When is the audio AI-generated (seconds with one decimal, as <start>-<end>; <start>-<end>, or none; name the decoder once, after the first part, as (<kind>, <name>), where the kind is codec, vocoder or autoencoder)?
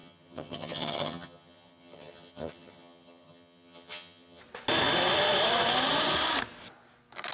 0.0-4.4 (vocoder, HiFi-GAN)